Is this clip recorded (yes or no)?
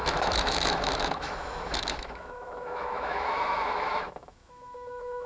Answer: no